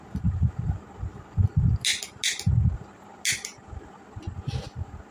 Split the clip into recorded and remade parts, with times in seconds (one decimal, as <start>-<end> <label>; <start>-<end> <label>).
0.0-5.1 recorded